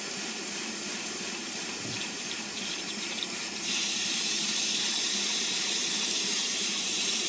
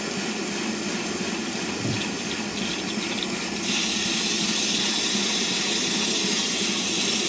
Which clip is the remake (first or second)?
first